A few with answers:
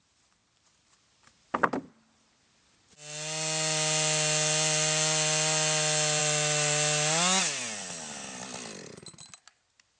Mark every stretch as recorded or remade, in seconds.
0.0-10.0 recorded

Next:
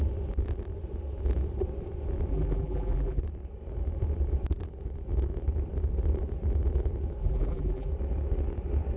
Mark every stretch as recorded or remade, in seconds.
0.0-2.3 recorded; 2.3-3.2 remade; 3.2-7.2 recorded; 7.2-7.9 remade; 7.9-9.0 recorded

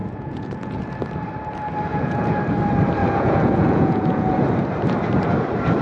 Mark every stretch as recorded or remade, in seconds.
0.0-0.9 remade; 0.9-1.9 recorded; 1.9-2.4 remade; 2.4-3.0 recorded; 3.0-4.4 remade; 4.4-5.8 recorded

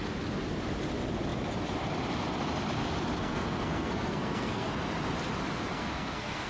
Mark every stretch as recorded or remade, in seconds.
0.0-3.2 recorded; 3.2-4.7 remade; 4.7-5.7 recorded; 5.7-6.5 remade

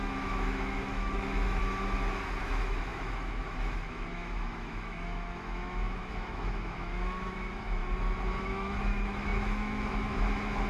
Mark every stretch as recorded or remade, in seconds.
0.0-1.6 remade; 1.6-2.4 recorded; 2.4-7.8 remade; 7.8-8.4 recorded; 8.4-10.7 remade